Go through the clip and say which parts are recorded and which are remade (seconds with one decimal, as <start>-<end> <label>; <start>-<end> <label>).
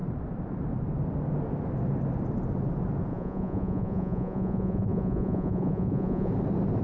0.0-3.1 recorded; 3.1-6.3 remade; 6.3-6.8 recorded